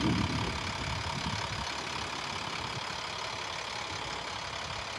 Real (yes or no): yes